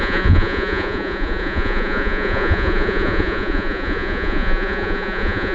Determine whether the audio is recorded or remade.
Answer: remade